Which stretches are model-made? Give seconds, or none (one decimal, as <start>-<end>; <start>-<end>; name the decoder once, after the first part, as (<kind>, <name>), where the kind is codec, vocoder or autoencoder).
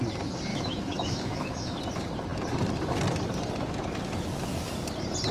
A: 0.5-1.8 (autoencoder, DAC-VAE)